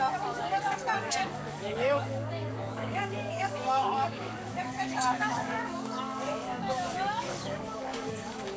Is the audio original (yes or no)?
no